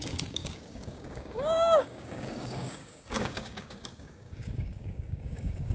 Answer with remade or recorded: remade